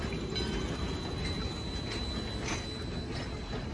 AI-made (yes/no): no